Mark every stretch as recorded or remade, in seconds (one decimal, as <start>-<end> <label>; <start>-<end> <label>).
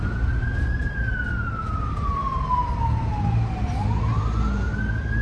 0.0-5.2 recorded